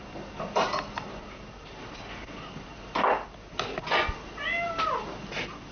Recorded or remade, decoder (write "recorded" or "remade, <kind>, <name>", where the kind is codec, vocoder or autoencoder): recorded